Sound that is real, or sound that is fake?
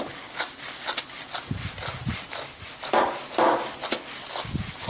real